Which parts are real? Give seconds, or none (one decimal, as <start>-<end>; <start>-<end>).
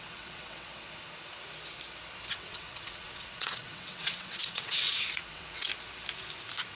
0.7-2.3; 5.7-6.7